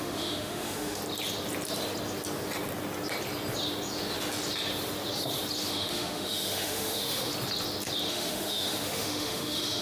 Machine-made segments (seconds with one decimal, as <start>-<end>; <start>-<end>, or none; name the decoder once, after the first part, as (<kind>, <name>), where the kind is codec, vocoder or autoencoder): 0.0-1.0 (autoencoder, DAC-VAE); 5.7-7.3; 8.1-9.8